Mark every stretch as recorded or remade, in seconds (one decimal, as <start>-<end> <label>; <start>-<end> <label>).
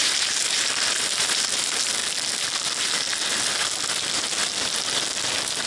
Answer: 0.0-2.0 remade; 2.0-5.7 recorded